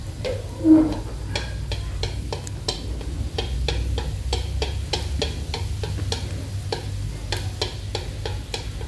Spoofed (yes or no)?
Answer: no